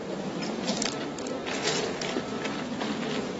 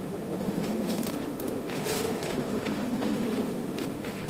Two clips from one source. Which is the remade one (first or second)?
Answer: second